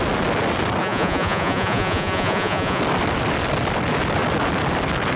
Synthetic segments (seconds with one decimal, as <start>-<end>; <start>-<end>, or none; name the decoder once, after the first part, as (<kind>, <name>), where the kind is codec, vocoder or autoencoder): 0.8-2.8 (vocoder, Vocos)